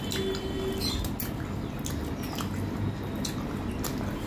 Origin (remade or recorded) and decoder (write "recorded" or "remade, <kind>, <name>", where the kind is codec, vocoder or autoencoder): recorded